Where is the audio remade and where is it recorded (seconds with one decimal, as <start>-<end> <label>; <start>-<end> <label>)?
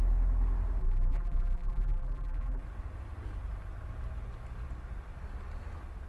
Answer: 0.0-0.8 recorded; 0.8-2.6 remade; 2.6-6.1 recorded